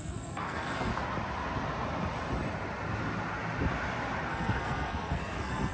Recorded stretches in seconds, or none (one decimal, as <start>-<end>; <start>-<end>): 0.9-4.3